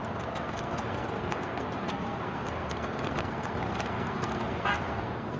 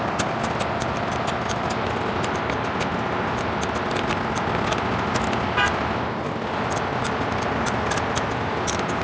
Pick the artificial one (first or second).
first